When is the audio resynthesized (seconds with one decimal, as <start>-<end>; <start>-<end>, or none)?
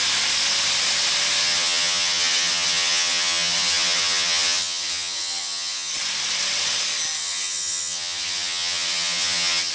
1.4-5.9; 7.2-9.7